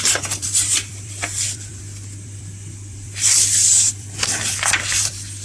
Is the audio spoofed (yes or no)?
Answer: yes